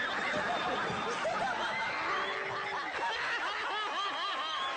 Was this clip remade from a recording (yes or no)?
no